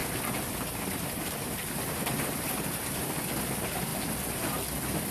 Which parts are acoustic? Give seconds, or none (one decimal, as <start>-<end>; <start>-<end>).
3.1-5.1